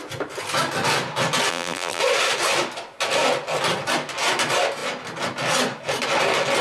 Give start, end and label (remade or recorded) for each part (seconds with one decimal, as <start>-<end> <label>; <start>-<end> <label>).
0.0-1.5 recorded; 1.5-2.0 remade; 2.0-6.6 recorded